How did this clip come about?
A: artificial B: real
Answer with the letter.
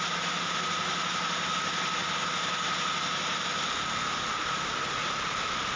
B